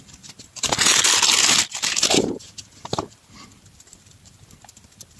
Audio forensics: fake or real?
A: fake